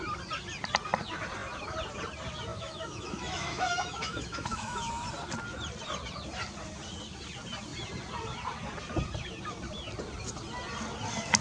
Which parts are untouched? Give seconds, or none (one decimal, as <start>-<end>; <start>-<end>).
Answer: 0.0-2.5; 4.9-11.4